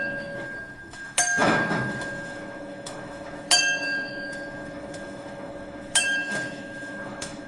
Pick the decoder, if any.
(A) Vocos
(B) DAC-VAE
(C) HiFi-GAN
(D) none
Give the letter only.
B